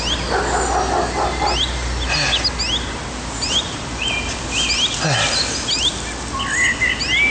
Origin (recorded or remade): recorded